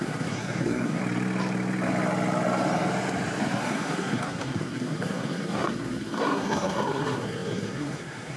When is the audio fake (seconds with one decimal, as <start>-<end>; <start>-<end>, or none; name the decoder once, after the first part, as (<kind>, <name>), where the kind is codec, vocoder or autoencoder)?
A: 0.0-1.0 (codec, SNAC); 3.6-8.4